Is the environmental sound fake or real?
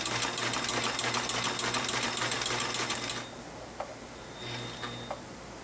real